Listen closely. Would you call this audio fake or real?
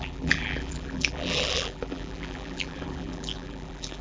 fake